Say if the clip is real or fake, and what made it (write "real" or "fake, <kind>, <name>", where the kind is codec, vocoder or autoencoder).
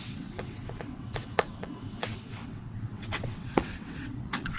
fake, vocoder, WaveNeXt